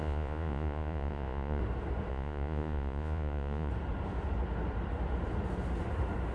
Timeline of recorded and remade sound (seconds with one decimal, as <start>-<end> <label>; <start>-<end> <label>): 0.0-1.6 remade; 1.6-2.1 recorded; 2.1-3.7 remade; 3.7-6.3 recorded